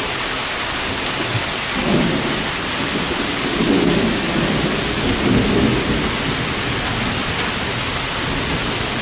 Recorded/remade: recorded